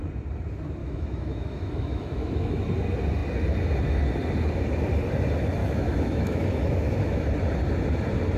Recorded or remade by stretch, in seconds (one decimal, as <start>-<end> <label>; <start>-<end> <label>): 0.0-0.8 recorded; 0.8-2.6 remade; 2.6-5.6 recorded; 5.6-7.2 remade; 7.2-8.4 recorded